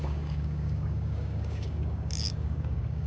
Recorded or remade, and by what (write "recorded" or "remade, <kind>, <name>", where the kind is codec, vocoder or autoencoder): remade, codec, DAC